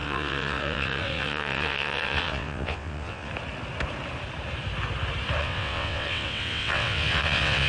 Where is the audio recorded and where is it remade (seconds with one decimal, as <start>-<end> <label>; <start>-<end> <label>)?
0.0-3.3 remade; 3.3-5.4 recorded; 5.4-7.7 remade